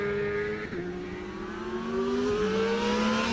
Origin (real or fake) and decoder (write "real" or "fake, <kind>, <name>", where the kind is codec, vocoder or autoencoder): real